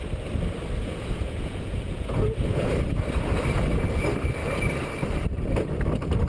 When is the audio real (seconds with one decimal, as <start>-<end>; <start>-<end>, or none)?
0.0-0.8; 2.7-6.3